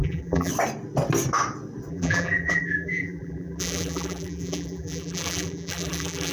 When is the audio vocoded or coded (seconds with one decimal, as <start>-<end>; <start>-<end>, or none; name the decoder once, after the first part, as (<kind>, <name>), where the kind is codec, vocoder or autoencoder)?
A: 0.0-0.5 (vocoder, BigVGAN v2); 1.9-6.3